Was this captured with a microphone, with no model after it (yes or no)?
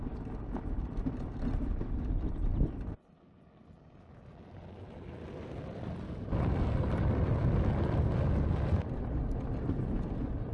yes